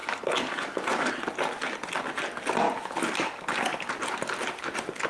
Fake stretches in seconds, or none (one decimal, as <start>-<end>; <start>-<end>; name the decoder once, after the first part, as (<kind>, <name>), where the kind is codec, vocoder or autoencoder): 0.0-1.1 (codec, DAC)

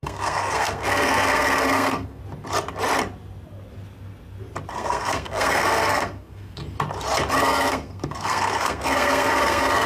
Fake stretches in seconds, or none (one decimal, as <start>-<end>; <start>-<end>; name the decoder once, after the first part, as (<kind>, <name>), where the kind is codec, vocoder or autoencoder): 0.0-2.2 (codec, SNAC); 4.7-6.6; 7.3-9.9

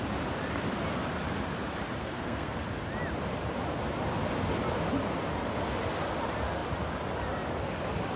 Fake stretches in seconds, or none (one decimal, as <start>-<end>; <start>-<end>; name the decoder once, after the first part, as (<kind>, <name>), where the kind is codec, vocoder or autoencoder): 2.0-2.6 (codec, SNAC)

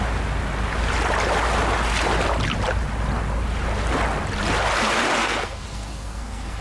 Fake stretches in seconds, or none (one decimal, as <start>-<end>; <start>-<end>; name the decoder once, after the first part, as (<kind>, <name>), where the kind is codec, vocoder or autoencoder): 5.2-6.6 (codec, SNAC)

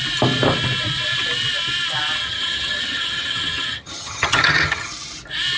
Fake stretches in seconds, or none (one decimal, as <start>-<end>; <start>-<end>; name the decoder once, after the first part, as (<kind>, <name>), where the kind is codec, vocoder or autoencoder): 2.2-4.9 (vocoder, HiFi-GAN)

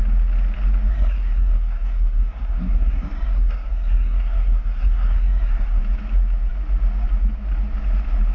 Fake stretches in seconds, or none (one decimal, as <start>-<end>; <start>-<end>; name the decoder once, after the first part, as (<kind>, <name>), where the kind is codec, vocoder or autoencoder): 0.9-5.8 (codec, SNAC)

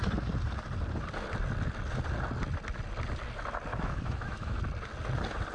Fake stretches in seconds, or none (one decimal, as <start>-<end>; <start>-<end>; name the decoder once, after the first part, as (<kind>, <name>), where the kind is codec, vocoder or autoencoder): 3.7-4.6 (autoencoder, DAC-VAE)